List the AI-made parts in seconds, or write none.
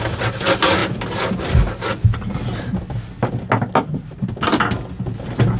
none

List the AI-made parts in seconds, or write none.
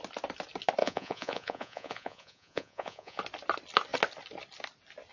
0.8-3.2 (vocoder, Vocos)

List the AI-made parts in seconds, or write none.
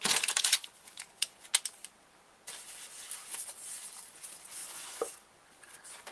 0.0-1.5 (vocoder, Vocos); 4.1-6.1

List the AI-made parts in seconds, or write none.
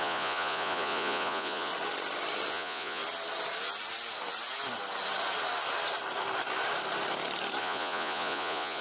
0.0-1.7 (vocoder, Vocos); 2.5-3.0; 7.6-8.8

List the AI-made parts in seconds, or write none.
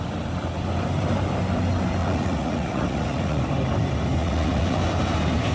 2.0-3.4 (vocoder, Vocos); 4.2-4.8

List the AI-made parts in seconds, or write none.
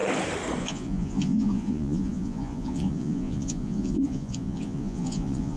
0.6-5.6 (vocoder, Vocos)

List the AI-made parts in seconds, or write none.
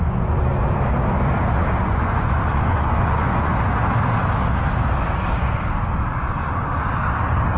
0.0-0.5 (vocoder, Vocos); 1.8-3.5; 6.1-6.7